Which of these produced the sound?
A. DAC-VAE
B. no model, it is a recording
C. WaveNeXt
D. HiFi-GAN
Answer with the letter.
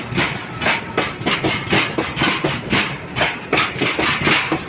B